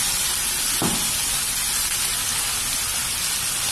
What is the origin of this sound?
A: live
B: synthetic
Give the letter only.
A